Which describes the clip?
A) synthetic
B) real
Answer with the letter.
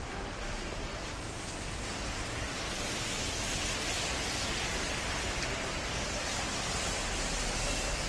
B